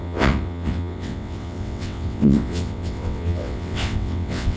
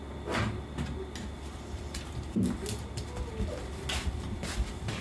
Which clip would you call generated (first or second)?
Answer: first